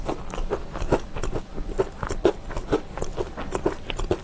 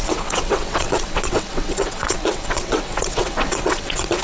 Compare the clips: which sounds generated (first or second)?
second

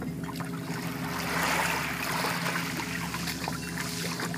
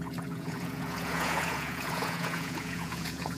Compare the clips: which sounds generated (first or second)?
second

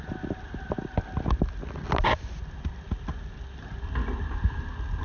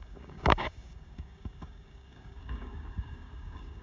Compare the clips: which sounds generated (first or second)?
second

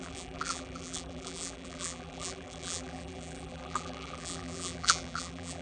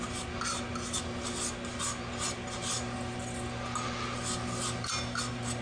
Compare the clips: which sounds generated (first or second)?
first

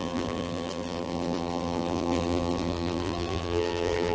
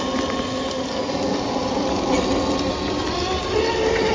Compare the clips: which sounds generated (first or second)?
first